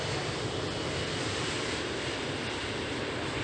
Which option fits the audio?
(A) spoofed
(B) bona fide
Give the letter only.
B